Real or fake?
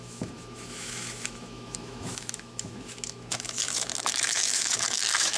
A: fake